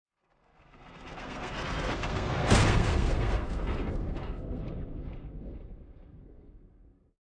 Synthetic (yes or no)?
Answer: yes